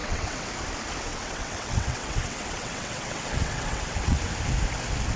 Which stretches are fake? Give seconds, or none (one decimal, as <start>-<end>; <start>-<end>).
0.0-0.5; 1.1-4.2